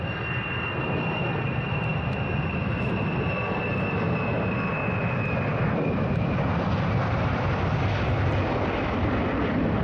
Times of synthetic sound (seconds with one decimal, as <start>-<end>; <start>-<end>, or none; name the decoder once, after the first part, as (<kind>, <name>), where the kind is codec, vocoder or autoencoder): none